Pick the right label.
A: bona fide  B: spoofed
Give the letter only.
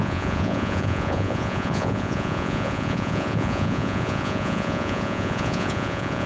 B